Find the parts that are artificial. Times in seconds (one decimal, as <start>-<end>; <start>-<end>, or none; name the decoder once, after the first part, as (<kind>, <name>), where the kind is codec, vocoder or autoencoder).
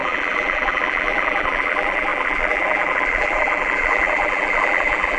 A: 0.0-5.2 (vocoder, BigVGAN v2)